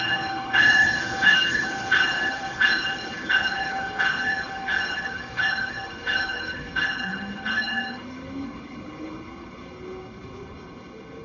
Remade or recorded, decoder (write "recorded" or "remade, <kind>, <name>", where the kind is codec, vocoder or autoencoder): remade, codec, HILCodec